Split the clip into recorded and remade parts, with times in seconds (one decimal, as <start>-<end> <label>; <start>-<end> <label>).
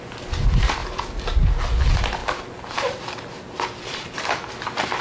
0.0-0.8 recorded; 0.8-1.6 remade; 1.6-2.2 recorded; 2.2-5.0 remade